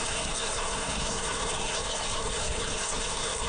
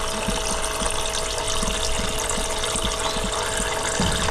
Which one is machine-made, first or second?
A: first